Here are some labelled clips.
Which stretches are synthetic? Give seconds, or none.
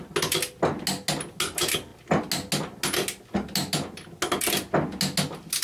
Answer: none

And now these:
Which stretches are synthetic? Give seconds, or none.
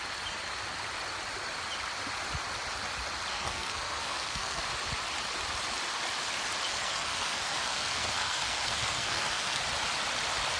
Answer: 3.3-4.6 (codec, SNAC); 6.7-9.6